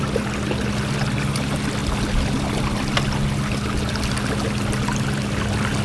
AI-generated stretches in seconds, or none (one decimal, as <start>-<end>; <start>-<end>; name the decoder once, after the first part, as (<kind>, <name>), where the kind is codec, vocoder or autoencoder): none